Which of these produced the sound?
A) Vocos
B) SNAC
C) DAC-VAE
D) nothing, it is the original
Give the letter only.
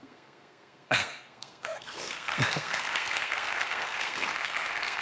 B